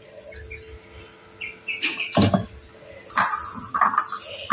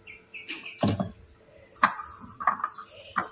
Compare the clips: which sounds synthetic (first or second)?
second